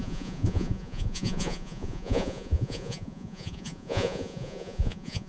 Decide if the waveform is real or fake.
fake